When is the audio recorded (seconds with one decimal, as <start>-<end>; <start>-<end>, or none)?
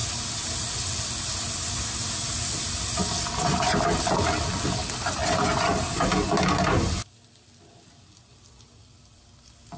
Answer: 0.0-9.8